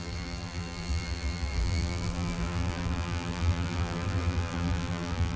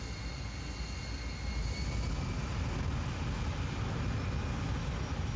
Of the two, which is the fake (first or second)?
first